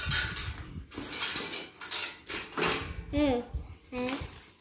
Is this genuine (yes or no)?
yes